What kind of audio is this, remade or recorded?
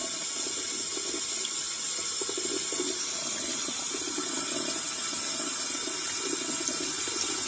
recorded